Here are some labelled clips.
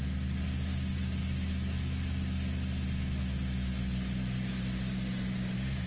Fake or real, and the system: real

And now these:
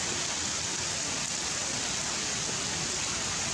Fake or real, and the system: real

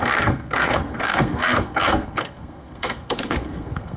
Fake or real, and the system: fake, codec, SNAC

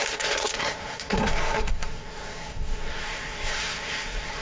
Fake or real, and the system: fake, codec, SNAC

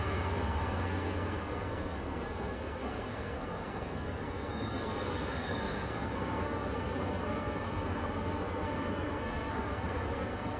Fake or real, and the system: fake, codec, SNAC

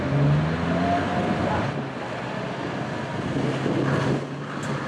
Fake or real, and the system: real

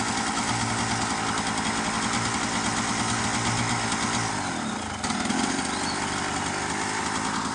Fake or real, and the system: real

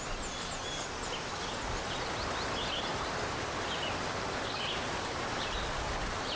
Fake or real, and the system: real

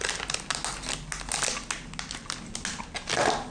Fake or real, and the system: real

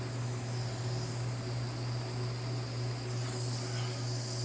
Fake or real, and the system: real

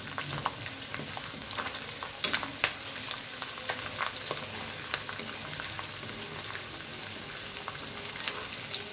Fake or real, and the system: real